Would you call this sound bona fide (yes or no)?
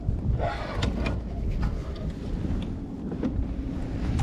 yes